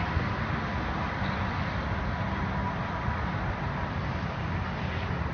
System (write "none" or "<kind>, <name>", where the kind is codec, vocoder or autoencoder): none